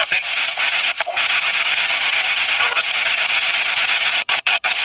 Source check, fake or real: fake